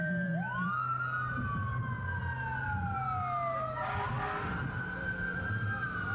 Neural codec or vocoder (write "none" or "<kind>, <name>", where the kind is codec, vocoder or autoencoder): none